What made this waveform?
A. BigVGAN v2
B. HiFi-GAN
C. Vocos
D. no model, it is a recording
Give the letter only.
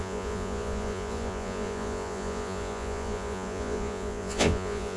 C